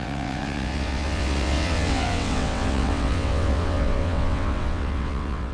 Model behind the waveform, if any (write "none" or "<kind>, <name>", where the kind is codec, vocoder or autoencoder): vocoder, WaveNeXt